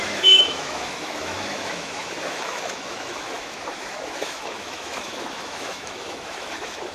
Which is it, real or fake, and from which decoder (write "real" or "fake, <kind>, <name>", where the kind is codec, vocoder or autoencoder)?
fake, autoencoder, DAC-VAE